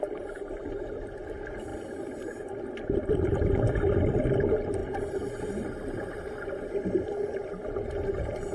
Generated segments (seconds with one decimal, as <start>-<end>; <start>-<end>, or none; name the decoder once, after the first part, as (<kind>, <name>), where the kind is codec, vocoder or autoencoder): 4.8-6.3 (vocoder, BigVGAN v2)